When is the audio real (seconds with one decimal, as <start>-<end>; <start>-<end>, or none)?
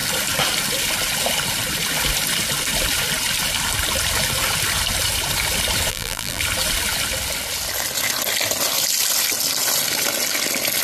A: 0.0-5.9; 6.4-10.8